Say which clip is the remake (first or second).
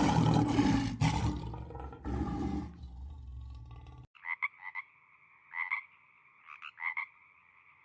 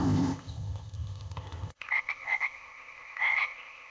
second